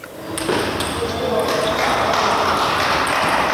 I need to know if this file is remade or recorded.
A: recorded